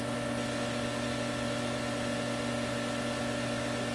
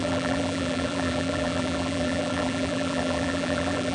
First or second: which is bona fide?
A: first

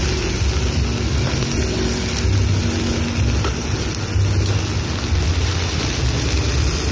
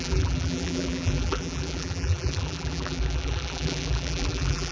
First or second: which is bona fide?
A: first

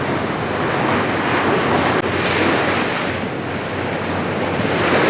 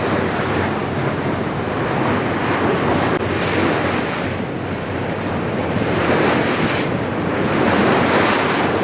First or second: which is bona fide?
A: first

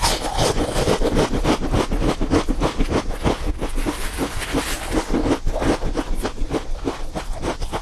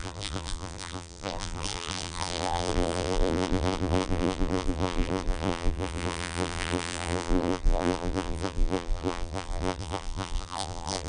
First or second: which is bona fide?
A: first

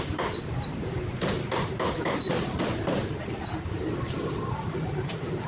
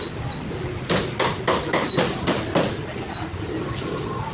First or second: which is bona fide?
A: second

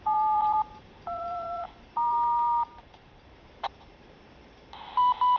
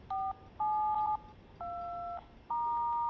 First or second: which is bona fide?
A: second